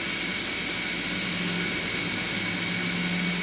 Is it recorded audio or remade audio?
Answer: recorded